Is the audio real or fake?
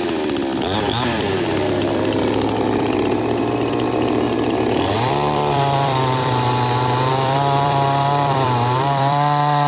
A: fake